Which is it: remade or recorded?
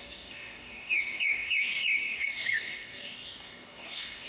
remade